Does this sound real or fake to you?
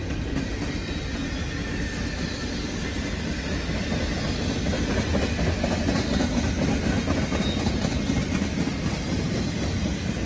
real